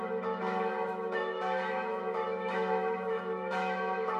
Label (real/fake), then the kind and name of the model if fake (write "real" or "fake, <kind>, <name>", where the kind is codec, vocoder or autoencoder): fake, autoencoder, DAC-VAE